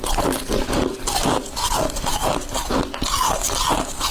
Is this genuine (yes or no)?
yes